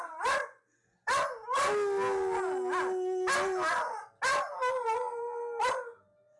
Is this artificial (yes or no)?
no